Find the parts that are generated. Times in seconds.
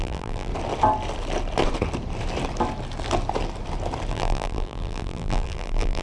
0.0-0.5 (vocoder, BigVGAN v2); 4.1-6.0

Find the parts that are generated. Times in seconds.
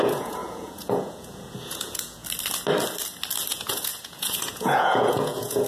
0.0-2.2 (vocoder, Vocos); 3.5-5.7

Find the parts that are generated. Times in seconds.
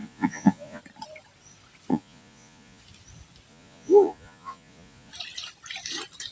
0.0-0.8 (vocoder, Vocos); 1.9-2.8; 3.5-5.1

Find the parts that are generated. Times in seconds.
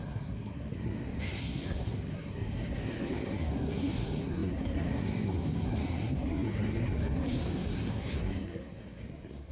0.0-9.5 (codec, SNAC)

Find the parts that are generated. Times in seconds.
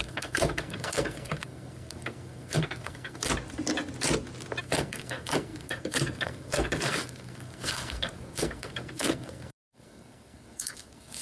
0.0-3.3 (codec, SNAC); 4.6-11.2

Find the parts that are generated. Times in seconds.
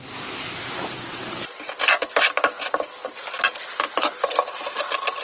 none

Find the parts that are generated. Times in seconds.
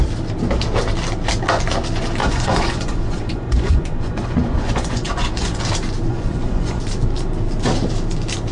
2.2-5.6 (vocoder, Vocos); 6.1-6.8